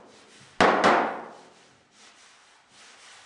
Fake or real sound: real